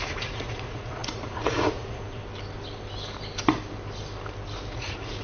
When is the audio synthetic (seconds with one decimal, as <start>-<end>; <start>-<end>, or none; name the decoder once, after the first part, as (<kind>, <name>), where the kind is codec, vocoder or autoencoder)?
0.0-2.2 (vocoder, Vocos); 4.7-5.2